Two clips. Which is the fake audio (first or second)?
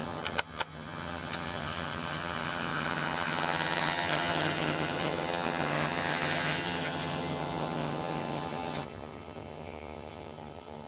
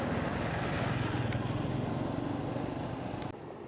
first